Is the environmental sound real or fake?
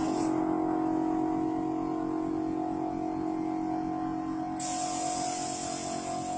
real